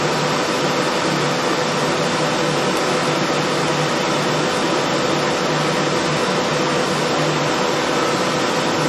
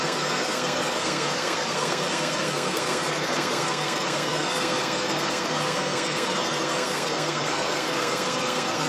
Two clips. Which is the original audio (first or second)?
first